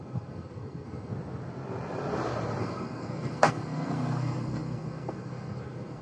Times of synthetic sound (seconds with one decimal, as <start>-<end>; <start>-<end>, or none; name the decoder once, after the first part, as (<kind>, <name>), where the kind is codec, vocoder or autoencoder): 0.0-1.1 (codec, SNAC); 2.6-6.0